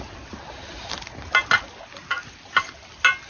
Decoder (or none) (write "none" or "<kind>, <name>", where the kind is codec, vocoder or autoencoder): none